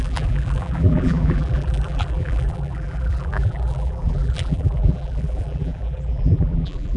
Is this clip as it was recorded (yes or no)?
no